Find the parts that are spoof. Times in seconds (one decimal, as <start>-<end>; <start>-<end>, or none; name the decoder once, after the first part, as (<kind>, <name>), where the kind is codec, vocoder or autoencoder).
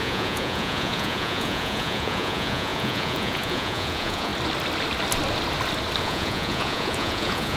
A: 0.0-4.3 (vocoder, Vocos); 6.0-7.6